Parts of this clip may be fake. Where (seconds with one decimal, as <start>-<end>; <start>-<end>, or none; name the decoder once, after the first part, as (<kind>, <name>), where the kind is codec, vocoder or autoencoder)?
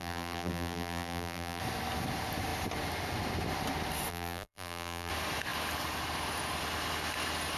0.0-1.6 (vocoder, BigVGAN v2); 4.1-5.1